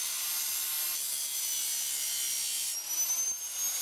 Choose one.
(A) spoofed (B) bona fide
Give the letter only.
B